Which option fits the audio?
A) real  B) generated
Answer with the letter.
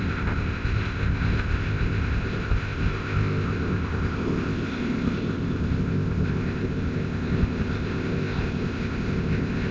B